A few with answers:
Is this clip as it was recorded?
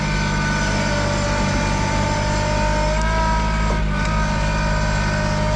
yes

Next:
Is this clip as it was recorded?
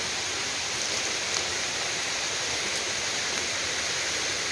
yes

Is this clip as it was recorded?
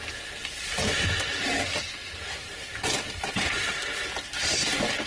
yes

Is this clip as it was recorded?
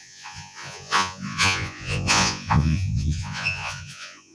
no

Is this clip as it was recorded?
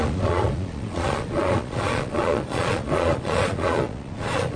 no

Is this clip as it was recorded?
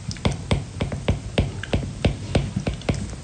yes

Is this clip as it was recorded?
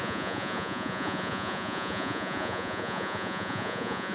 no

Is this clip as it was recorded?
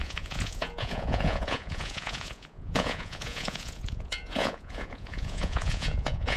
no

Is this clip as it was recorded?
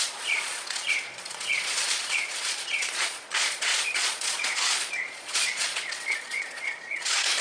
no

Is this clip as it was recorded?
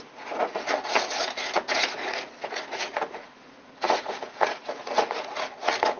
no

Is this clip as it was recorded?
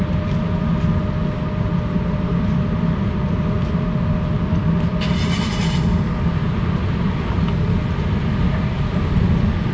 yes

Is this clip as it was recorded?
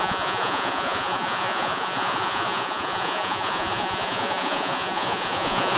no